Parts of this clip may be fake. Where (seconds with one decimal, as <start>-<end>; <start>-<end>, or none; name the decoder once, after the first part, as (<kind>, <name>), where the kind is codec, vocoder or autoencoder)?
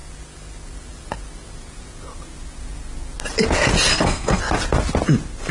3.9-4.4 (codec, SNAC)